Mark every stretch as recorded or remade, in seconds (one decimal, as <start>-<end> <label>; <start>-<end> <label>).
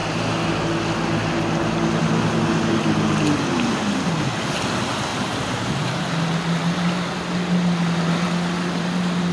0.0-5.1 recorded; 5.1-6.1 remade; 6.1-9.3 recorded